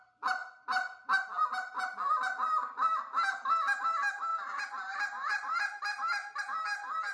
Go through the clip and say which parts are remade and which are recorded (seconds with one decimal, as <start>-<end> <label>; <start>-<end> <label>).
0.0-4.3 recorded; 4.3-6.4 remade; 6.4-7.1 recorded